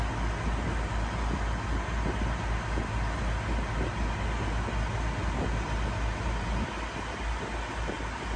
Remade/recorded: recorded